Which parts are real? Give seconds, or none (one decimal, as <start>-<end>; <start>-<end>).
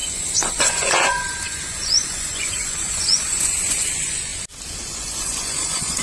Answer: 4.3-4.9